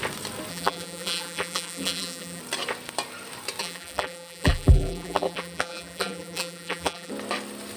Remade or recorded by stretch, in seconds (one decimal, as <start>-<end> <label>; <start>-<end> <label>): 0.0-0.5 recorded; 0.5-2.4 remade; 2.4-3.6 recorded; 3.6-7.1 remade; 7.1-7.8 recorded